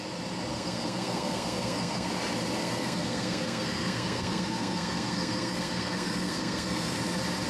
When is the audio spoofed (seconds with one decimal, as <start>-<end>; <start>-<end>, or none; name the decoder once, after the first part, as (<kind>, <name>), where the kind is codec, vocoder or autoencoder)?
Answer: 0.5-2.1 (codec, SNAC); 2.6-7.0